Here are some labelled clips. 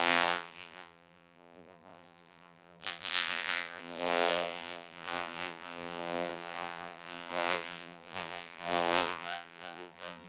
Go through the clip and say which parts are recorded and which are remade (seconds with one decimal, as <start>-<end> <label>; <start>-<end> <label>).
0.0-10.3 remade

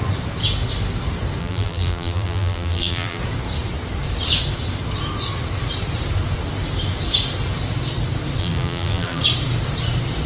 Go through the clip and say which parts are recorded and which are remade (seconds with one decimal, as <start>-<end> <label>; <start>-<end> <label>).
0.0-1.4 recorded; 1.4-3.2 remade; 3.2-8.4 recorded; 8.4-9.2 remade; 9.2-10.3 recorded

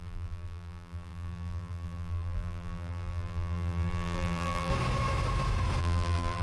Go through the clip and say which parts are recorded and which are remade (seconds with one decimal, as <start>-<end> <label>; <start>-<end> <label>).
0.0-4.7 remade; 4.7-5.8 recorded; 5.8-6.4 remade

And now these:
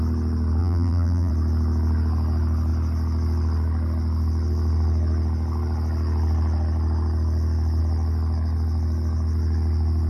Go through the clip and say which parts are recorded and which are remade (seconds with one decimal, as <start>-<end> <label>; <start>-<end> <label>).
0.0-0.6 recorded; 0.6-1.3 remade; 1.3-10.1 recorded

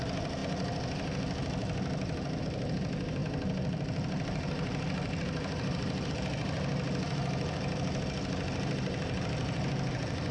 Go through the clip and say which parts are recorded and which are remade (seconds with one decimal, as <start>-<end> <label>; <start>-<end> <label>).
0.0-3.2 recorded; 3.2-6.1 remade; 6.1-10.3 recorded

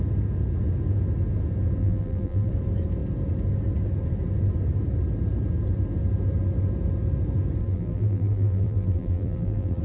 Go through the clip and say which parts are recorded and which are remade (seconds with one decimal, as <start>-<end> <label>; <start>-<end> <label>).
0.0-1.8 recorded; 1.8-2.5 remade; 2.5-7.6 recorded; 7.6-9.8 remade

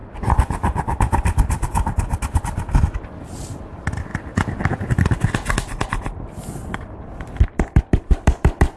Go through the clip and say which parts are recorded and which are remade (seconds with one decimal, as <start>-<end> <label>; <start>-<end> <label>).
0.0-3.0 recorded; 3.0-8.8 remade